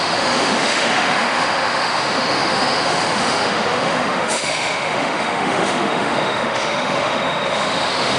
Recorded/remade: remade